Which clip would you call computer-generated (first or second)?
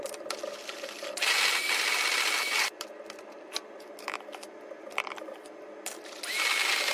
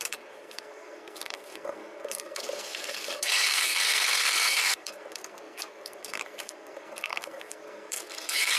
second